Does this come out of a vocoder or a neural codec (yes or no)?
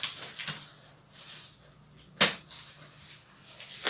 no